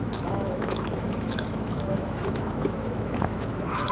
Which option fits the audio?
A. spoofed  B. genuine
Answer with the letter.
A